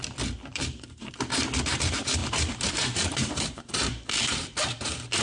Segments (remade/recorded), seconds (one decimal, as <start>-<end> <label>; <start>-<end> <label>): 0.0-0.5 recorded; 0.5-1.1 remade; 1.1-2.2 recorded; 2.2-4.4 remade; 4.4-5.2 recorded